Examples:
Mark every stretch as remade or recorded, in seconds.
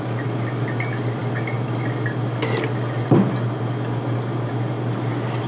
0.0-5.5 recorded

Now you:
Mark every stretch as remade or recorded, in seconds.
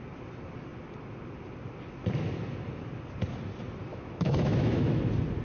0.0-3.9 recorded; 3.9-5.0 remade; 5.0-5.4 recorded